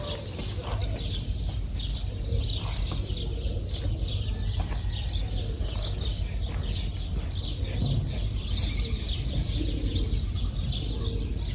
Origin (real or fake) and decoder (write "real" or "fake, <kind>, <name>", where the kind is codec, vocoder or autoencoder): real